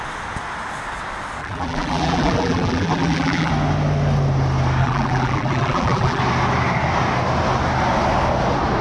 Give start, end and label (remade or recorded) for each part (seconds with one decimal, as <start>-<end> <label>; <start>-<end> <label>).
0.0-1.4 recorded; 1.4-3.5 remade; 3.5-4.8 recorded; 4.8-6.2 remade; 6.2-8.8 recorded